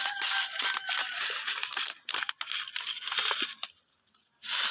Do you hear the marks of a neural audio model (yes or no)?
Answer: no